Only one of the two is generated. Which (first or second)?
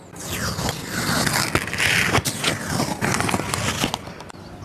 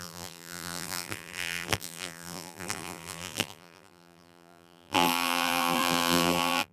second